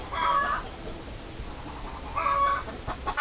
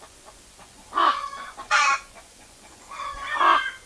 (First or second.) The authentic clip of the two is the first